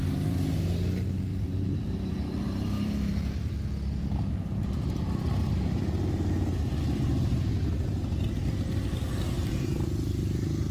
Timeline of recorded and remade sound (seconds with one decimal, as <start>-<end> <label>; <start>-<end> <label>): 0.0-1.3 recorded; 1.3-3.5 remade; 3.5-10.7 recorded